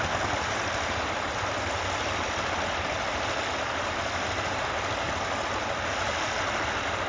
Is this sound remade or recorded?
recorded